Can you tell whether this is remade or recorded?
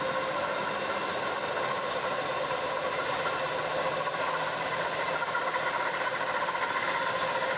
recorded